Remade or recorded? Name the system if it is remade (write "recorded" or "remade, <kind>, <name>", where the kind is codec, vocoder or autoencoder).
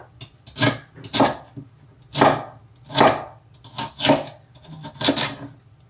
recorded